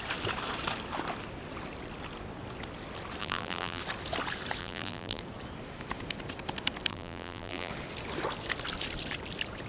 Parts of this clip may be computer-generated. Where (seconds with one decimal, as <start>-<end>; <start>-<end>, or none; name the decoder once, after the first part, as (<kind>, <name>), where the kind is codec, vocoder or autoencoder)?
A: 3.2-3.8 (vocoder, BigVGAN v2); 4.6-5.2; 6.9-7.7